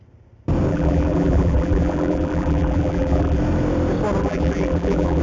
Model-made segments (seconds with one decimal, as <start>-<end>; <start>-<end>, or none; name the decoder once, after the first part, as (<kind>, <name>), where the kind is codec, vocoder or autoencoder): 0.7-3.4 (vocoder, BigVGAN v2); 4.2-5.2